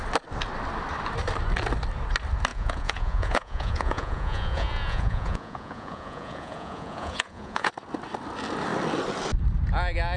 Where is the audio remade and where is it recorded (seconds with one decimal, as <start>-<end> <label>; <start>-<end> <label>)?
0.0-2.5 recorded; 2.5-7.7 remade; 7.7-10.2 recorded